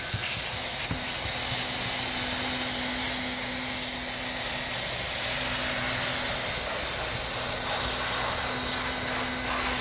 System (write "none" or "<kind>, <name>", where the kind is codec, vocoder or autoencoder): none